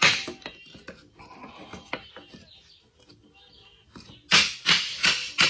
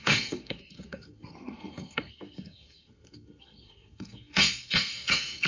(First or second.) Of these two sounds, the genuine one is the first